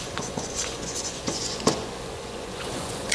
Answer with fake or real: fake